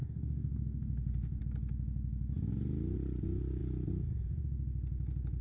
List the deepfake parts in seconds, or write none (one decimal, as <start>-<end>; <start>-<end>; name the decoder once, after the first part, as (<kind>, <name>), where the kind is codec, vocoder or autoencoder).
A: 0.0-1.4 (codec, DAC)

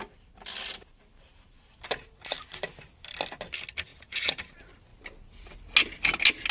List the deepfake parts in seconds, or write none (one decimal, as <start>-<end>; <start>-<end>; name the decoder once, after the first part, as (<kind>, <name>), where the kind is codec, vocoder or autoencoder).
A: 3.9-4.4 (vocoder, Vocos)

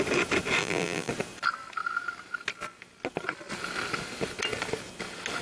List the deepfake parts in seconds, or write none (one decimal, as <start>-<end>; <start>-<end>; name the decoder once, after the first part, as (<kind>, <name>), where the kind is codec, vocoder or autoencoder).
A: 0.6-1.1 (vocoder, BigVGAN v2)

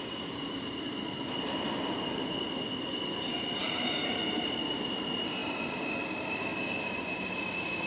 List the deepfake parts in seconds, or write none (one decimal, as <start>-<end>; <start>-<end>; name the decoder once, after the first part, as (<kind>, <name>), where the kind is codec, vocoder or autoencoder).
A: 0.0-0.9 (vocoder, BigVGAN v2); 2.9-6.5; 7.3-7.9

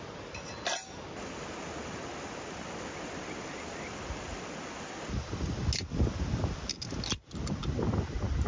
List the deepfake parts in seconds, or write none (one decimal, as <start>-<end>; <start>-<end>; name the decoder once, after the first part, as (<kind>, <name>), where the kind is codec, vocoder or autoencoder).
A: none

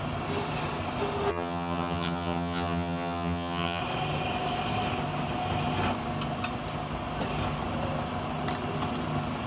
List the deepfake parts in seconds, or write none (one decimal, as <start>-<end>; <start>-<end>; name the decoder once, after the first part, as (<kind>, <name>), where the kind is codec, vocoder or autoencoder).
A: 1.3-3.8 (vocoder, HiFi-GAN)

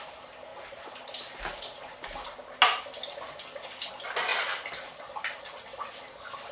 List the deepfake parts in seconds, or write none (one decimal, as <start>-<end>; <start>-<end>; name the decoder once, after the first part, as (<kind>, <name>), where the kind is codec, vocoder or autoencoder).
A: none